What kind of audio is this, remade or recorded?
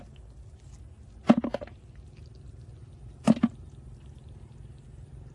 recorded